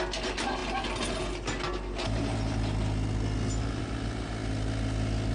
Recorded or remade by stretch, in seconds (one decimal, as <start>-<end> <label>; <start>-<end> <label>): 0.0-5.3 recorded